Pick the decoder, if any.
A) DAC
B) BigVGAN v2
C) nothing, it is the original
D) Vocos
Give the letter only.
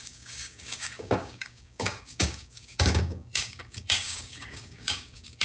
A